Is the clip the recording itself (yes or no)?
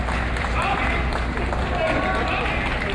yes